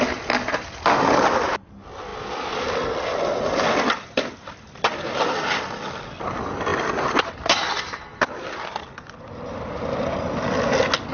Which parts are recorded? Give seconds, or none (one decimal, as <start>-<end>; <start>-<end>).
0.0-2.1; 5.8-11.1